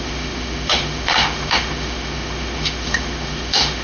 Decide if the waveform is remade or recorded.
remade